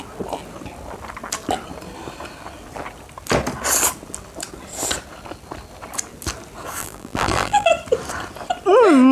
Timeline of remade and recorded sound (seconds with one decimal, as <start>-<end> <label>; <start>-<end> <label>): 0.0-6.8 recorded; 6.8-7.7 remade; 7.7-9.1 recorded